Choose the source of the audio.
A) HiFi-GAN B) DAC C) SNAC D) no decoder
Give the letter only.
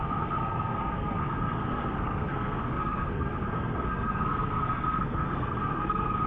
C